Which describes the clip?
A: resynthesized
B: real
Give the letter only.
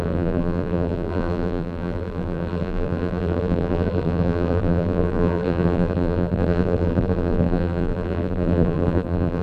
A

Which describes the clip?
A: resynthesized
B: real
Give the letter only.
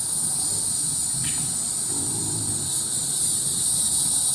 B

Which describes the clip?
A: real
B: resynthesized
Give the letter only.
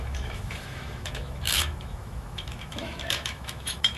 B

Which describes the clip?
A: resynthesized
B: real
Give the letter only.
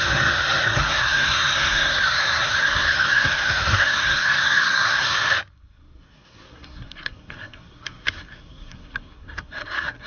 A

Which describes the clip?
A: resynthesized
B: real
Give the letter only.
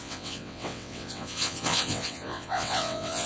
A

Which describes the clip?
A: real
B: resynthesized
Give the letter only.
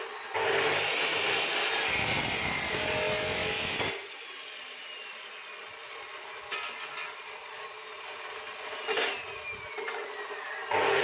A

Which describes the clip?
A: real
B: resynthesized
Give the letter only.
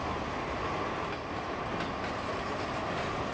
A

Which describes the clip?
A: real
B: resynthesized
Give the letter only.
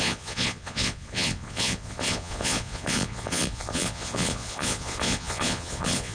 B